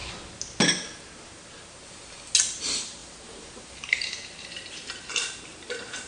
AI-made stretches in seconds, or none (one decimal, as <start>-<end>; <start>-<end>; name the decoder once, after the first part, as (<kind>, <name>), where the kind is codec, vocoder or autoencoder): 2.6-6.1 (vocoder, BigVGAN v2)